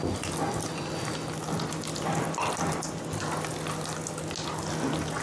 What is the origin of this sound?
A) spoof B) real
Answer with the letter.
B